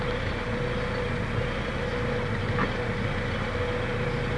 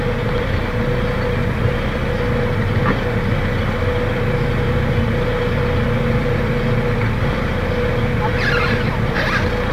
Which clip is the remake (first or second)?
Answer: second